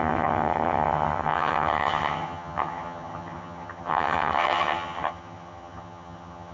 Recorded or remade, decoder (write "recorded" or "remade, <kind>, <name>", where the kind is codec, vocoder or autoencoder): remade, vocoder, HiFi-GAN